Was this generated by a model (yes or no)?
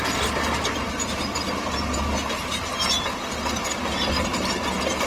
no